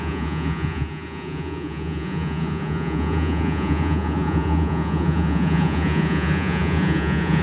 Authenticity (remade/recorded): remade